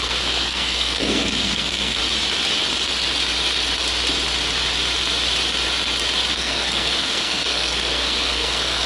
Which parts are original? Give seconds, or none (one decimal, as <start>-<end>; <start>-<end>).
2.0-6.3